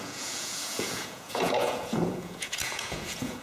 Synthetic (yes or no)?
yes